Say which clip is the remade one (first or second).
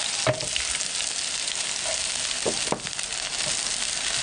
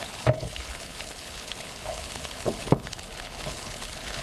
second